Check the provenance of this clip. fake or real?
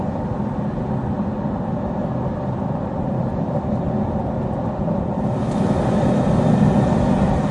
real